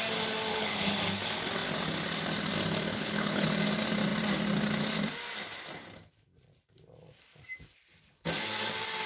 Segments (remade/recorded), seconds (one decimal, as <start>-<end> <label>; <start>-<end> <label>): 0.0-0.5 recorded; 0.5-1.0 remade; 1.0-2.9 recorded; 2.9-3.5 remade; 3.5-9.1 recorded